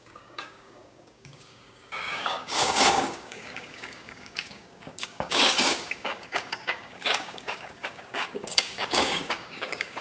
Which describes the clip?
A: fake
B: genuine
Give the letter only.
A